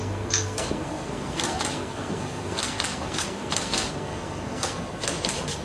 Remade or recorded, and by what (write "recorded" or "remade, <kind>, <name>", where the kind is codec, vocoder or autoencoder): remade, codec, SNAC